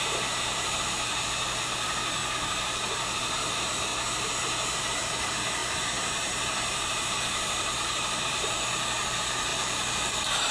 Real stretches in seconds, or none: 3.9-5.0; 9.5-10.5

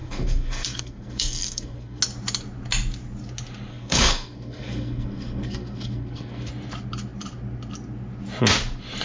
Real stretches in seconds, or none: 2.0-3.7; 6.5-9.0